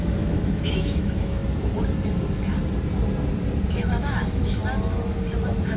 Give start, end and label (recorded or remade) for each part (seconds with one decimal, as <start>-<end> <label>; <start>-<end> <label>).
0.0-1.4 remade; 1.4-3.7 recorded; 3.7-4.6 remade; 4.6-5.8 recorded